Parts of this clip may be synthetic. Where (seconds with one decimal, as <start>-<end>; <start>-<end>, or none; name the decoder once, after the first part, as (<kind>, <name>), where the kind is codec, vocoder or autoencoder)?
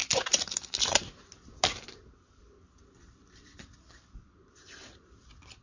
0.0-1.3 (vocoder, BigVGAN v2); 2.8-5.6